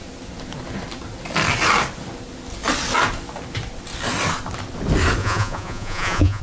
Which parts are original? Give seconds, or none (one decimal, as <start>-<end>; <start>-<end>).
0.0-5.2